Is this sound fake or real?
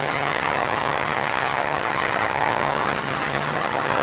fake